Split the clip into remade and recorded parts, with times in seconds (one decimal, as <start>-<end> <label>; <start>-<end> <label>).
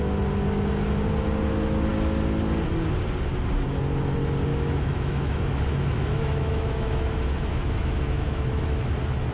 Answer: 0.0-4.5 recorded; 4.5-8.8 remade; 8.8-9.3 recorded